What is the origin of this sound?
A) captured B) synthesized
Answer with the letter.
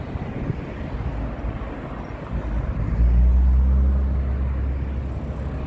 A